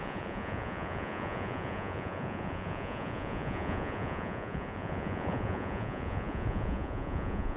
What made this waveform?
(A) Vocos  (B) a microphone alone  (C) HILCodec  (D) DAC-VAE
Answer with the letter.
A